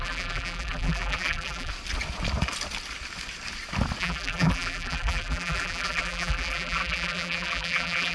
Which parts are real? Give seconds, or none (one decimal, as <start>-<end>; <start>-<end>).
1.7-4.0